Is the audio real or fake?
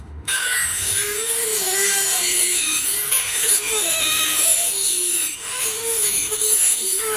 fake